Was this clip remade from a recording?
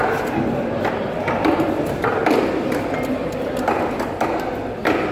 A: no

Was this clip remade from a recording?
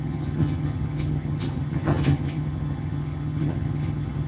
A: yes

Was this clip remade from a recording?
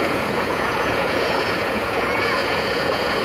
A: yes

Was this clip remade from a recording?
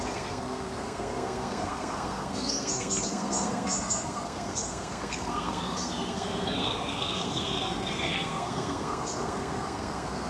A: yes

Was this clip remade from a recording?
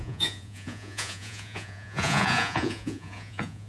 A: yes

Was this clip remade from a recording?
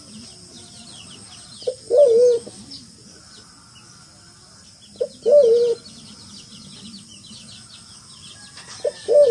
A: no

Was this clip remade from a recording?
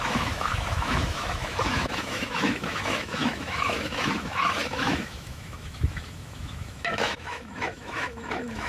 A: yes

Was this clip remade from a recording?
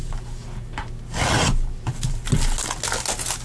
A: no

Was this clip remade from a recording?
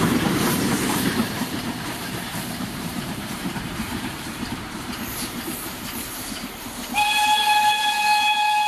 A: yes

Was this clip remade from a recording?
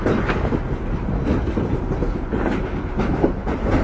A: no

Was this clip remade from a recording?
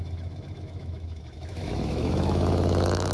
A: yes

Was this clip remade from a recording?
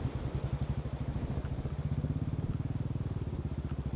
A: no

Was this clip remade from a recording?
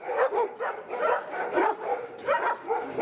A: no